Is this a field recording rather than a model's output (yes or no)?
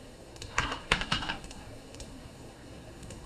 no